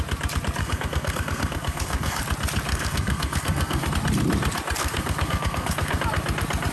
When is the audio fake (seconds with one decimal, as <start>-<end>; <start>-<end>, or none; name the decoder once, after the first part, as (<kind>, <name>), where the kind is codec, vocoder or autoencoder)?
0.6-2.2 (codec, SNAC); 2.7-3.9; 4.8-6.0